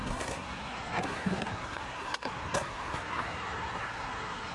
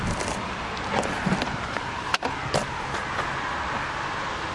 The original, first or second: second